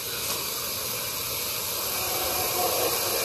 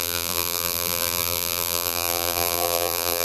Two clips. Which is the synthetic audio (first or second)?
second